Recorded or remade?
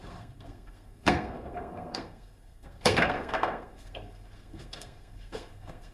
remade